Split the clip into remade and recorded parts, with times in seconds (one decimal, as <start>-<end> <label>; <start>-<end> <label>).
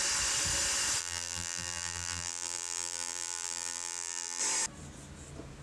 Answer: 0.0-1.0 recorded; 1.0-4.4 remade; 4.4-5.6 recorded